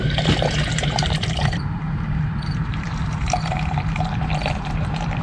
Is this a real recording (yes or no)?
no